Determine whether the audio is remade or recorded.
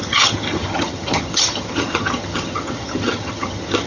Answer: remade